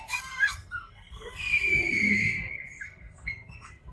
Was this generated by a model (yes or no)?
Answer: yes